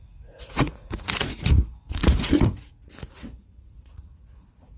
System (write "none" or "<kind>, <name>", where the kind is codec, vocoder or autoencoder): vocoder, Vocos